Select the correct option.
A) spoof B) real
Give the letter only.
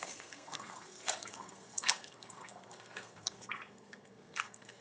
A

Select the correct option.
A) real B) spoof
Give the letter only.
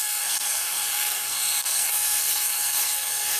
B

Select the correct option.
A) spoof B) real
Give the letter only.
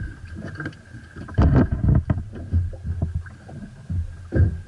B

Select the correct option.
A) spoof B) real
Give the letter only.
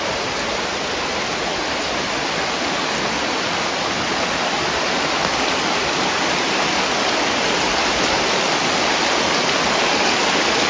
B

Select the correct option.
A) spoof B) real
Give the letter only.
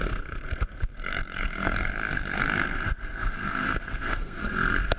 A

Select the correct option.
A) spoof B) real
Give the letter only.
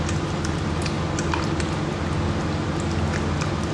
B